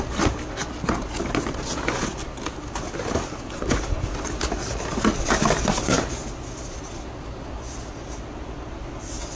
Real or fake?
real